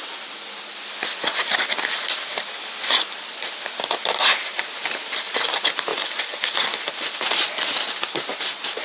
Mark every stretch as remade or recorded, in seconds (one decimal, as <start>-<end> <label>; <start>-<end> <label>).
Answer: 0.0-8.8 recorded